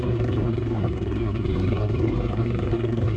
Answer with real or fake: fake